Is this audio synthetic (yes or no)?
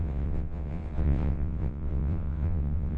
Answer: yes